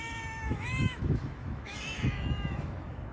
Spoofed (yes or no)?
yes